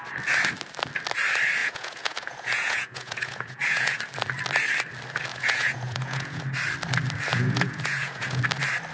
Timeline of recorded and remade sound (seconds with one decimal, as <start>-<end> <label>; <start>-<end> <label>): 0.0-1.6 recorded; 1.6-4.0 remade; 4.0-5.3 recorded; 5.3-6.4 remade; 6.4-7.3 recorded; 7.3-8.4 remade; 8.4-8.9 recorded